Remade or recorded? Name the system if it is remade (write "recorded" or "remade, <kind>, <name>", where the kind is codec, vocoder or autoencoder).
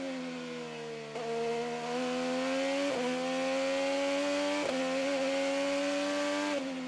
recorded